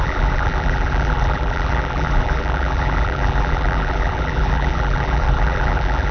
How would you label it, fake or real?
fake